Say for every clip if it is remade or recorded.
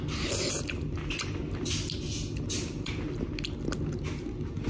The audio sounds recorded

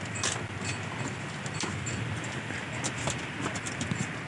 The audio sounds recorded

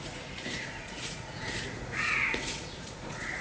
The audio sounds remade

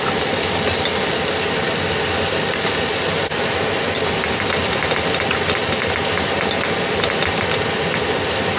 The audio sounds recorded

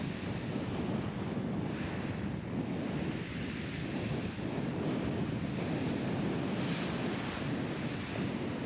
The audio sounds recorded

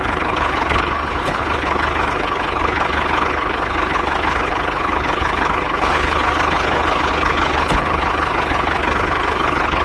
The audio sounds remade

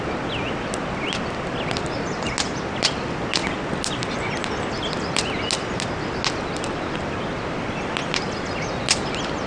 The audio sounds recorded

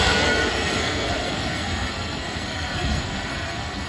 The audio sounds remade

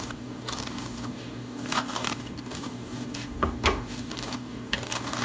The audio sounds remade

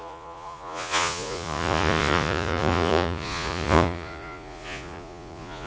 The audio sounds remade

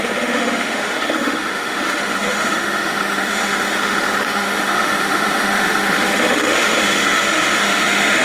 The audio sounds remade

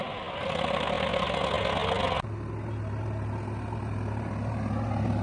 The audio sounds recorded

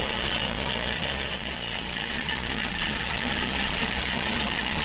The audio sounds remade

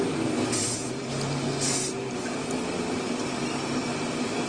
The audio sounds recorded